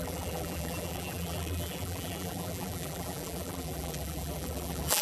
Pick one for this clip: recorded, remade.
remade